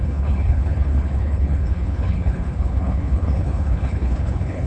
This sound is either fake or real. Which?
fake